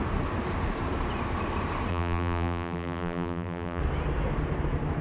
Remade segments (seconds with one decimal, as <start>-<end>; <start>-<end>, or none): 1.9-3.8

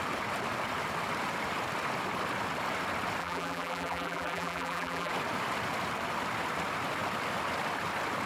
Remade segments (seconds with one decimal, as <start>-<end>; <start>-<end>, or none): 3.2-5.1

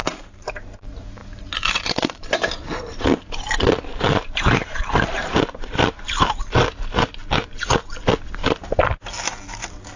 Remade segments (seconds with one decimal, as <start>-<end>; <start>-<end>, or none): 0.0-0.5; 1.2-6.4

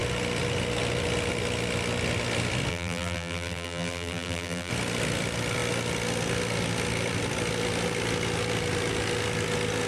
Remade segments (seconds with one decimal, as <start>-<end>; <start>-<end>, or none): 2.7-4.7

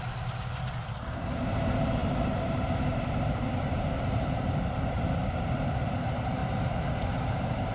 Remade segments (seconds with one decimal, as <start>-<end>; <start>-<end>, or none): 0.0-6.4; 7.2-7.7